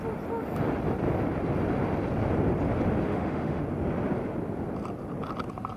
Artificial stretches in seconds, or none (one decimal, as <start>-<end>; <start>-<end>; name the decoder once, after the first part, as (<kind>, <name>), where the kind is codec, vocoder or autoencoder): 3.1-3.6 (autoencoder, DAC-VAE)